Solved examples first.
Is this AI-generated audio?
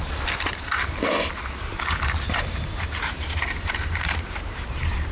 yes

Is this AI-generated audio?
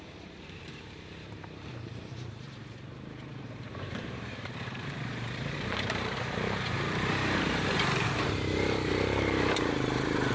yes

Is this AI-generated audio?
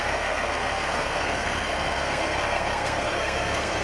yes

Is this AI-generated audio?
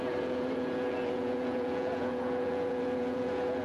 yes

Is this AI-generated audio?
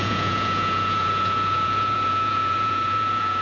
yes